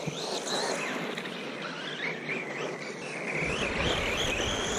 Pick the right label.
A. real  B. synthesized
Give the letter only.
A